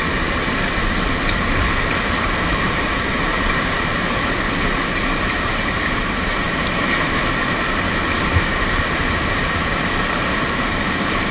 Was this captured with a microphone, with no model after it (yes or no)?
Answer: no